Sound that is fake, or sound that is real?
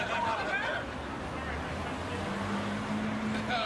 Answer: real